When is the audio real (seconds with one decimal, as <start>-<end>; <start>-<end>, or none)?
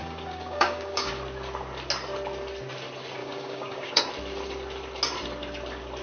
1.1-3.2; 4.0-6.0